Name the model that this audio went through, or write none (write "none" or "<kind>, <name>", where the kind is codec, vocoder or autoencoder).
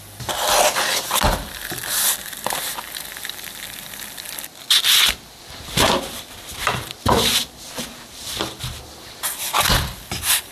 vocoder, BigVGAN v2